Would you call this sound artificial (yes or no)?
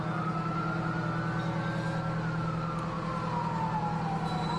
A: no